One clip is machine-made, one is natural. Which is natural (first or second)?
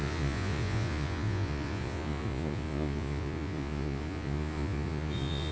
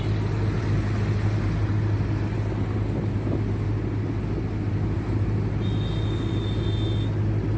second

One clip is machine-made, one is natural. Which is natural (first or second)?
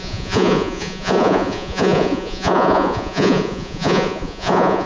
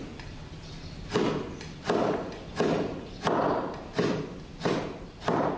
second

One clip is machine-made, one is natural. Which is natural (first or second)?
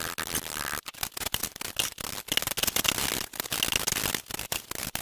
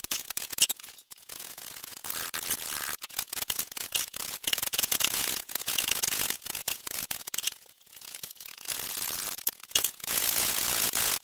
first